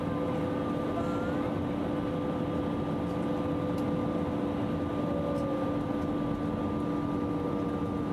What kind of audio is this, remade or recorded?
recorded